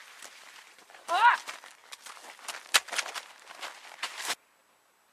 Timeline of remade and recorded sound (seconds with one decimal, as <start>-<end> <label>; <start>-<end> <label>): 0.0-0.7 recorded; 0.7-1.8 remade; 1.8-5.1 recorded